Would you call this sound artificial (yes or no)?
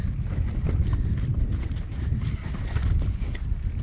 no